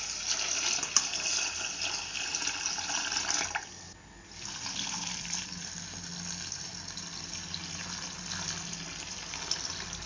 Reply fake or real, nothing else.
real